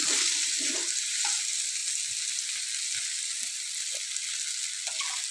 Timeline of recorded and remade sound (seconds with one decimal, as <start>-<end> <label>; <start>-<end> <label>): 0.0-5.3 recorded